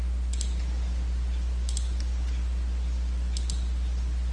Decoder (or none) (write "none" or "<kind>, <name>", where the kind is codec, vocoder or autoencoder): none